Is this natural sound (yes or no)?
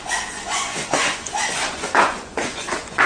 no